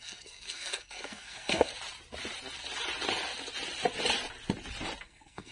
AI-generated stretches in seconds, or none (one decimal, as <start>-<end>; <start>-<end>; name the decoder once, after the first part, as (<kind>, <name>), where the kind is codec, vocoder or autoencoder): 0.0-1.7 (codec, SNAC); 5.0-5.5